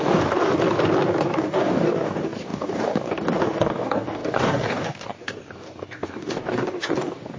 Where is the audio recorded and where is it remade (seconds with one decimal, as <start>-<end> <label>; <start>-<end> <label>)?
0.0-0.5 remade; 0.5-1.2 recorded; 1.2-7.4 remade